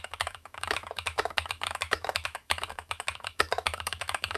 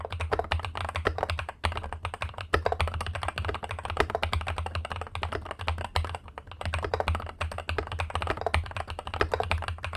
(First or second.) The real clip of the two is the second